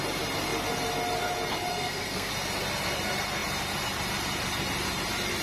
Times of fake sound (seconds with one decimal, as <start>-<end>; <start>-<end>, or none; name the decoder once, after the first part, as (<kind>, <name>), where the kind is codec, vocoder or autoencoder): 1.7-2.3 (codec, SNAC)